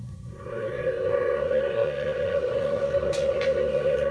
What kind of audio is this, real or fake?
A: fake